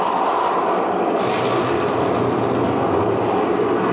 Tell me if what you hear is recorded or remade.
recorded